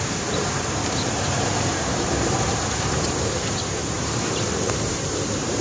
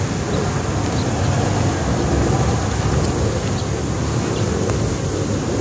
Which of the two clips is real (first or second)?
second